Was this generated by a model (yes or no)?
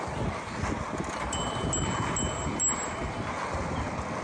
no